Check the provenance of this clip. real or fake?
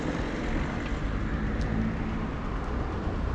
real